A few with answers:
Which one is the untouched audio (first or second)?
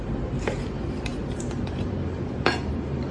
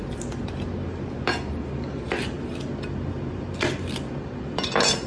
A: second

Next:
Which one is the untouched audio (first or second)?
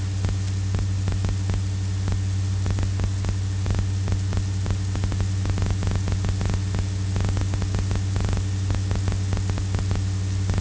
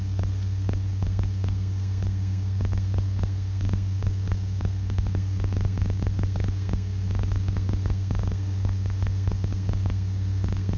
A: first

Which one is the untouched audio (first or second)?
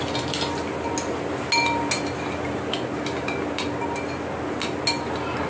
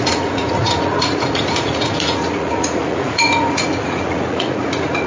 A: first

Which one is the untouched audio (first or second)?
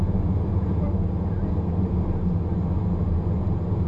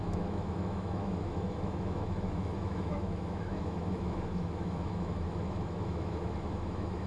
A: first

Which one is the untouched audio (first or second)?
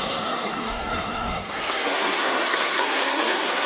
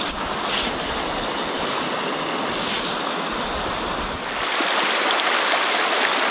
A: second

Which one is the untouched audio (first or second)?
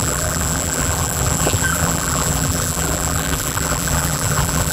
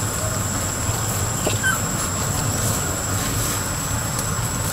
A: second